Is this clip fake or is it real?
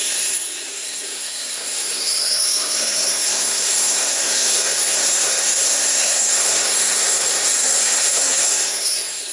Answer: fake